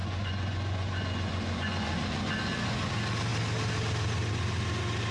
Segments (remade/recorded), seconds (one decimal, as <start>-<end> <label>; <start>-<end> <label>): 0.0-2.9 remade; 2.9-5.1 recorded